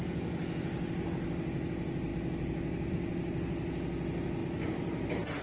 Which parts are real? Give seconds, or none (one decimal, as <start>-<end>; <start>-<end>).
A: 0.0-5.4

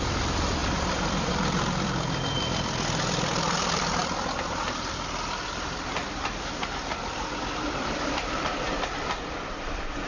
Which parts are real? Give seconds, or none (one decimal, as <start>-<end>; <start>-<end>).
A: none